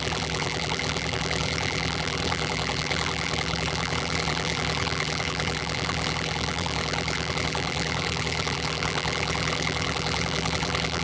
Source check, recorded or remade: remade